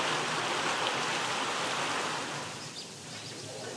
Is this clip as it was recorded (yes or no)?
yes